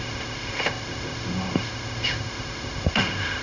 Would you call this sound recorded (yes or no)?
no